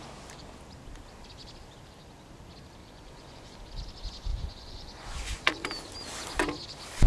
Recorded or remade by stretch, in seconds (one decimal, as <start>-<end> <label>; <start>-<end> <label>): 0.0-2.8 recorded; 2.8-3.6 remade; 3.6-4.3 recorded; 4.3-5.7 remade; 5.7-7.1 recorded